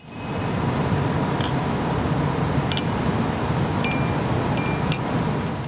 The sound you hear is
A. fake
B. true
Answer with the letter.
B